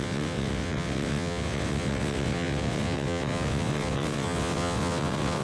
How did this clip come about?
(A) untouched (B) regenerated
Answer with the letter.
B